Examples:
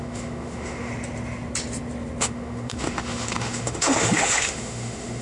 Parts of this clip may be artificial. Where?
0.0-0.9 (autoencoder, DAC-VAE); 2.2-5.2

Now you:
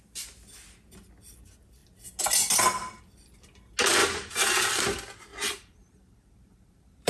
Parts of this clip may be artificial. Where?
4.0-4.8 (vocoder, BigVGAN v2); 5.3-7.1

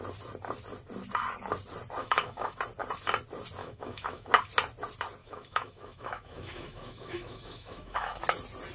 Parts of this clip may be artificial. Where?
2.0-2.6 (autoencoder, DAC-VAE); 3.6-4.3; 5.2-8.2